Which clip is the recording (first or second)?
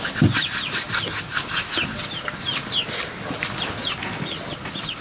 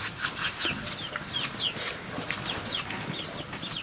first